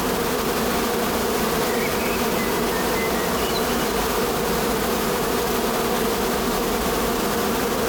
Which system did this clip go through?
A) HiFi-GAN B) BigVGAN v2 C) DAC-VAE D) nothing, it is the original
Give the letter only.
D